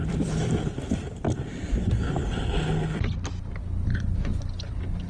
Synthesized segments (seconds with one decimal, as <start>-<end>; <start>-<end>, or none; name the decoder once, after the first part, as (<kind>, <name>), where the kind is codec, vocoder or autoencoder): 0.0-0.7 (vocoder, BigVGAN v2)